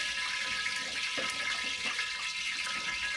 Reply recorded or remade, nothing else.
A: recorded